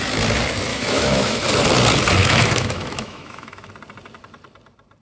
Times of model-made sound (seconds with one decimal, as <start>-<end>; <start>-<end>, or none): 0.7-1.4; 2.2-3.7